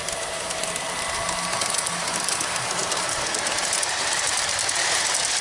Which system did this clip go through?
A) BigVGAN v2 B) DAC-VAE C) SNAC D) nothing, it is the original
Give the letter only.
A